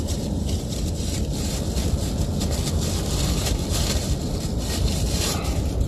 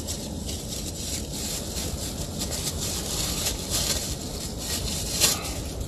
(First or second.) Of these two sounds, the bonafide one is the second